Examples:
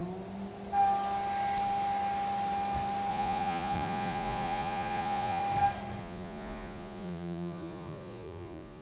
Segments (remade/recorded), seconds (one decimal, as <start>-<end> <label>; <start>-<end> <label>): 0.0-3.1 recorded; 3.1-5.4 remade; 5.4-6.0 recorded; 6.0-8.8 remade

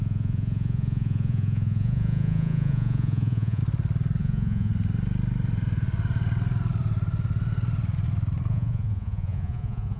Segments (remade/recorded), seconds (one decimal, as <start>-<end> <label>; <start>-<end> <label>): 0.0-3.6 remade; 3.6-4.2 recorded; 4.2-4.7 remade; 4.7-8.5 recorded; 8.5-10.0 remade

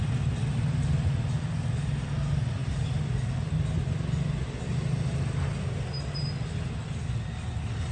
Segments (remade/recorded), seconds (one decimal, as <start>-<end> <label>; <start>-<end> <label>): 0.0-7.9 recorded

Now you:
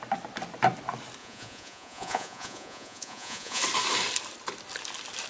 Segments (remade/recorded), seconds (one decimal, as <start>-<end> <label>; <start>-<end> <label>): 0.0-1.2 recorded; 1.2-3.6 remade; 3.6-5.3 recorded

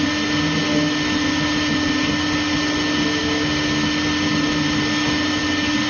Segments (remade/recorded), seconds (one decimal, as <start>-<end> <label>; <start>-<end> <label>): 0.0-5.9 recorded